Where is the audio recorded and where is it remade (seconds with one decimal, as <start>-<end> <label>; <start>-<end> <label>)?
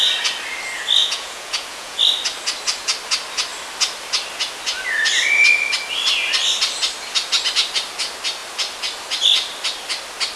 0.0-1.0 recorded; 1.0-2.0 remade; 2.0-10.4 recorded